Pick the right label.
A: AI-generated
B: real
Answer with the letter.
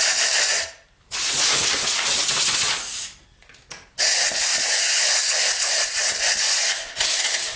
B